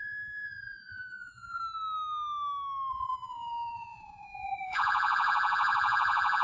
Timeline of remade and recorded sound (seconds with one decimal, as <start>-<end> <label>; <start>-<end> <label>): 0.0-1.6 remade; 1.6-2.9 recorded; 2.9-6.4 remade